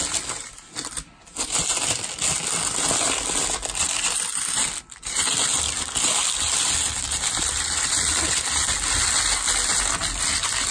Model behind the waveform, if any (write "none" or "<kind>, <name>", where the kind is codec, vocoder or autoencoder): none